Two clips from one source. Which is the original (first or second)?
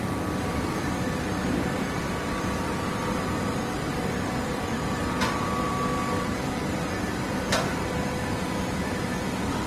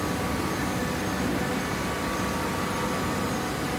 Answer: second